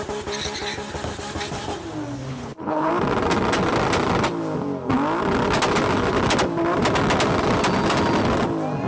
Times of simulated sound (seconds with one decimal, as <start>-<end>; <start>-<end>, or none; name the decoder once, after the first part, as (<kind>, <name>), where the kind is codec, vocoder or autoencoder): 2.3-2.9 (codec, HILCodec)